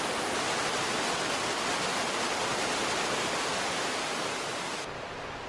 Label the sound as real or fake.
real